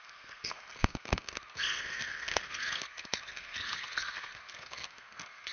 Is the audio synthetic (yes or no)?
yes